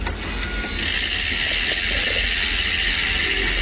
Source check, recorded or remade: recorded